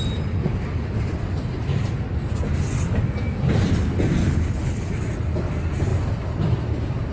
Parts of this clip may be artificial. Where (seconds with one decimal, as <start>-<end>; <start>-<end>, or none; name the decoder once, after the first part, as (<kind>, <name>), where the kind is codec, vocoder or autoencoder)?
4.2-4.9 (codec, HILCodec)